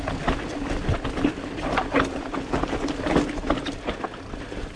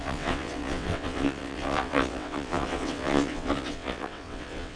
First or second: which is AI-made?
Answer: second